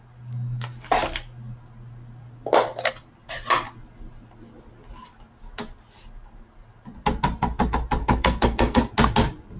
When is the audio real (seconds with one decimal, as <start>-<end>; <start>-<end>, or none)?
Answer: 0.0-8.0; 8.8-9.6